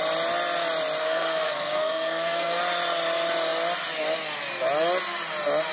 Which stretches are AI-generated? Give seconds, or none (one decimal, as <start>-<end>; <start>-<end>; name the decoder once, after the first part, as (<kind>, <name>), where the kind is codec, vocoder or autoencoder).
1.0-2.6 (codec, SNAC)